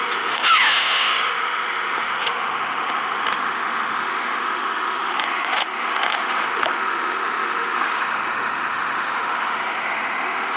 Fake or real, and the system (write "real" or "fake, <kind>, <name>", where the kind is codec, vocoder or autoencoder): fake, autoencoder, DAC-VAE